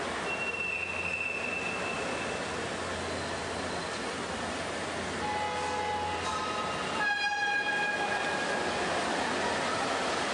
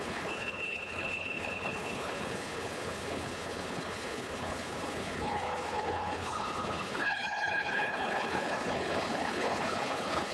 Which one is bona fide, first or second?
first